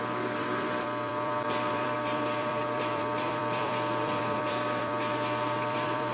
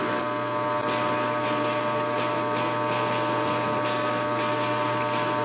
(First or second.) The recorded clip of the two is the second